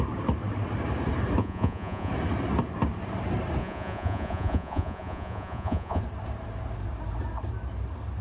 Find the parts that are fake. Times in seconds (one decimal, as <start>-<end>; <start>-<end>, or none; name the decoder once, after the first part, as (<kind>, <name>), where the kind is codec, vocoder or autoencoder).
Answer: 1.4-2.1 (vocoder, Vocos); 3.6-6.0